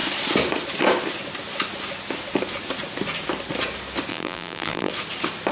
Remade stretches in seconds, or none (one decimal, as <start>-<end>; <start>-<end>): 4.1-4.9